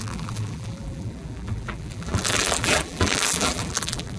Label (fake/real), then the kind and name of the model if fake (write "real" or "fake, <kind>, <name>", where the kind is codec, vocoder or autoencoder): fake, vocoder, BigVGAN v2